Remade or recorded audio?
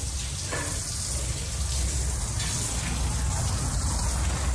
recorded